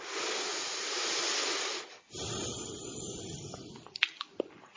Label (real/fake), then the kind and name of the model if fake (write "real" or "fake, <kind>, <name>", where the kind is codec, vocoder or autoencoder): real